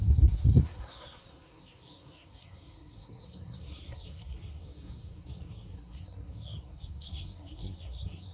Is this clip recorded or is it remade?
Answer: remade